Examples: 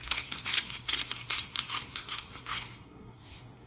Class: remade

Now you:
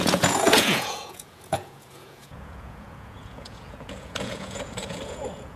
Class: remade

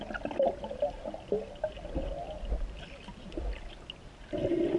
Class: recorded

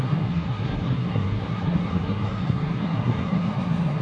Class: remade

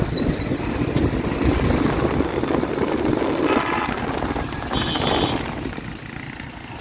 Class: recorded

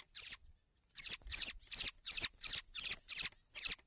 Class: recorded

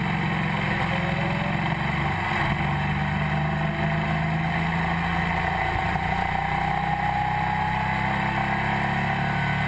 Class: recorded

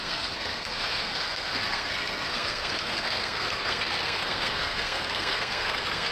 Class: remade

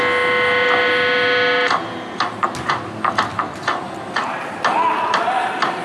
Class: recorded